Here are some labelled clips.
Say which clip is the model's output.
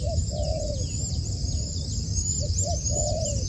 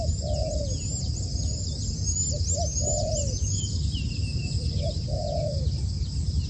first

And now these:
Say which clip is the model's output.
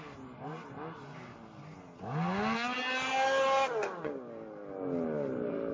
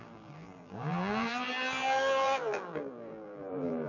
second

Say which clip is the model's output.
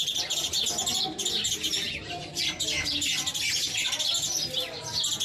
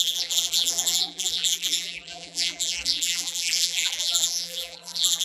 second